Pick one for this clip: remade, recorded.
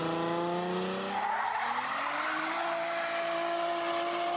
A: recorded